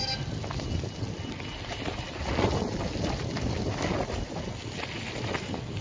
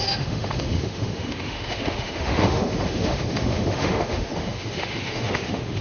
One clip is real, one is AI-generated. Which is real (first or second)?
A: first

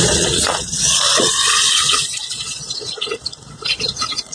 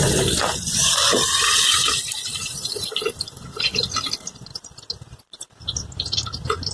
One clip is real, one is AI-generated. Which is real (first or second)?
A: second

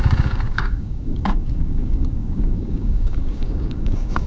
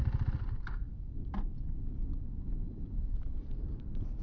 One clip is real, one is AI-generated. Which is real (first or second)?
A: second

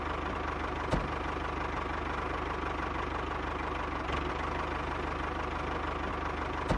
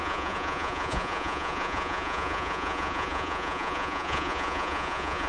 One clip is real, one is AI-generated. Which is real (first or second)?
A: first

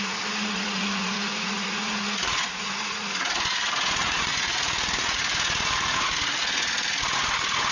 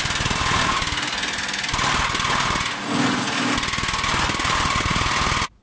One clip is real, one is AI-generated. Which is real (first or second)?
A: second